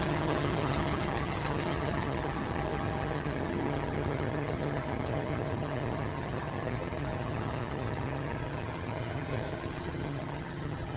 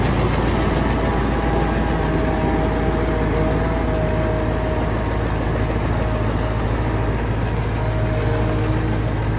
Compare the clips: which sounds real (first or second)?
second